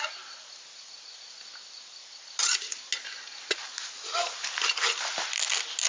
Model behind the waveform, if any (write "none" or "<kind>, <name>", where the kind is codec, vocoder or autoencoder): none